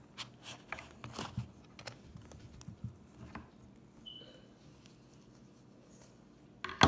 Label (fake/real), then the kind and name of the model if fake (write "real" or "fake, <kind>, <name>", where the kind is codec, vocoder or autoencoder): real